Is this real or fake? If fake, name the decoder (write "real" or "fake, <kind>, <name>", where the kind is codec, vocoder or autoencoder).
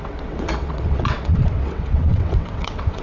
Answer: fake, vocoder, WaveNeXt